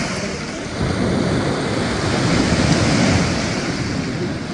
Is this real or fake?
real